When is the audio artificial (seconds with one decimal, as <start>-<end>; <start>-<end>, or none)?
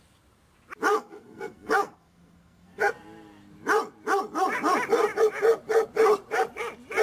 0.9-2.9